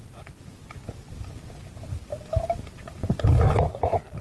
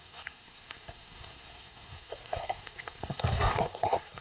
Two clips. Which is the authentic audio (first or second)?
first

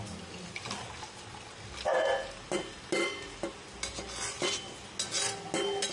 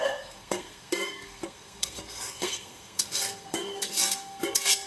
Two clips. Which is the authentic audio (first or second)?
first